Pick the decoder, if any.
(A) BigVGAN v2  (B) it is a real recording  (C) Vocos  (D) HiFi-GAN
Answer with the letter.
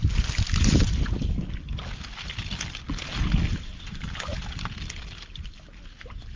B